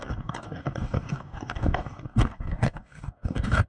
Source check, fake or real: fake